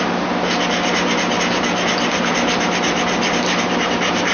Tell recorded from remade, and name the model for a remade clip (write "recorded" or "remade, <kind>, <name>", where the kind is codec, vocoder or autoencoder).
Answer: recorded